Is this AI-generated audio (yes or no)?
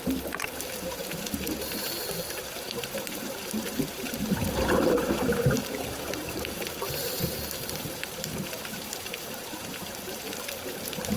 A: yes